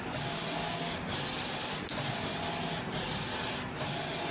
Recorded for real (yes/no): yes